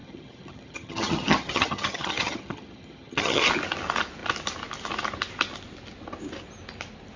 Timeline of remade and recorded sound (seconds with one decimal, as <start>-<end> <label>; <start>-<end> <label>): 0.0-3.4 remade; 3.4-7.2 recorded